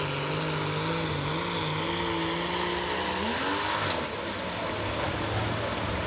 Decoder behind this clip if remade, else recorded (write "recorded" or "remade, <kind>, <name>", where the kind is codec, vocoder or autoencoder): recorded